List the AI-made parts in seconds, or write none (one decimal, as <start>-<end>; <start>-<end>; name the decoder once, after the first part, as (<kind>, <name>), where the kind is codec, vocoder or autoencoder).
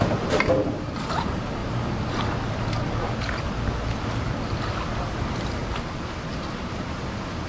0.0-1.6 (vocoder, BigVGAN v2); 4.9-7.5